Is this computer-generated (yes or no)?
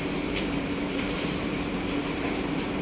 yes